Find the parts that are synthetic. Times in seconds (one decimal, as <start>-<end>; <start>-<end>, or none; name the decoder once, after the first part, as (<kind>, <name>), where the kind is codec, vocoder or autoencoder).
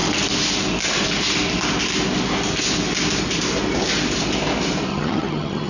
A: 4.9-5.7 (vocoder, HiFi-GAN)